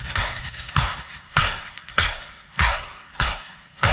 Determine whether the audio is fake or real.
fake